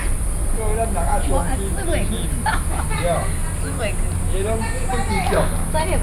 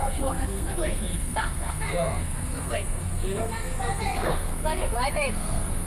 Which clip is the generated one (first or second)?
second